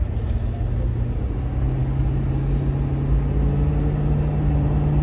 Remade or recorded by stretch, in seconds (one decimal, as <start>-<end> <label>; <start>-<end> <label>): 0.0-5.0 recorded